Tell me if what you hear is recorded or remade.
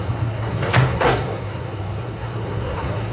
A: remade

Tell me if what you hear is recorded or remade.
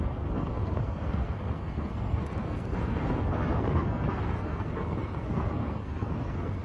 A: remade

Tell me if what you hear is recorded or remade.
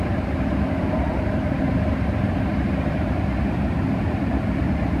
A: recorded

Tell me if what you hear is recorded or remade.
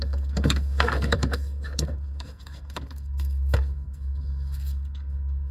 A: remade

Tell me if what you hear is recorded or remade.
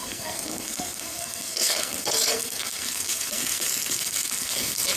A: remade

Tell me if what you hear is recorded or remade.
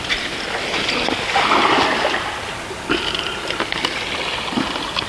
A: recorded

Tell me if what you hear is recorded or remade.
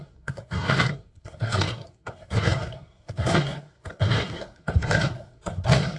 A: remade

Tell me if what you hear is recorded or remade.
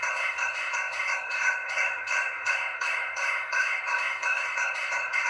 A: remade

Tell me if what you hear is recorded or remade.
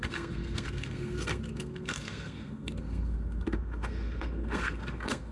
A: remade